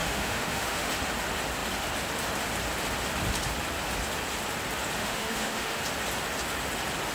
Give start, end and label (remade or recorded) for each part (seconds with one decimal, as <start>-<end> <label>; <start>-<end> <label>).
0.0-0.9 remade; 0.9-5.0 recorded; 5.0-5.8 remade; 5.8-7.1 recorded